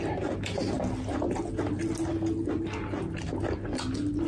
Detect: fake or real real